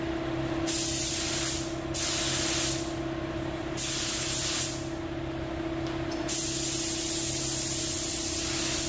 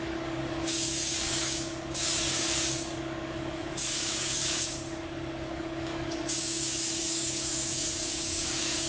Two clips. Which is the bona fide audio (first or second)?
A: first